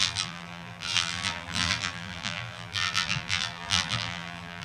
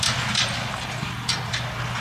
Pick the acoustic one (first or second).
second